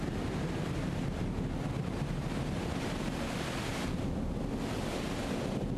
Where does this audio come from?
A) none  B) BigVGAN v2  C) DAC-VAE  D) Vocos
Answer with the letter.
A